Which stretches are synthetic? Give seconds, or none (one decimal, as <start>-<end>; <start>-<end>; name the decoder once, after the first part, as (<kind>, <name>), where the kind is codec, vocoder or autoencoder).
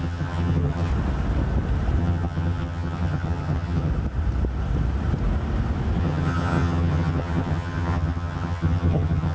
0.0-0.9 (vocoder, HiFi-GAN); 2.0-3.9; 6.0-9.3